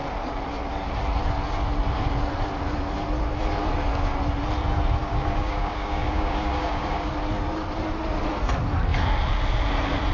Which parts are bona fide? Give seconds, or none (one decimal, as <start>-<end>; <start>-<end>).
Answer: 0.0-5.0; 7.1-10.1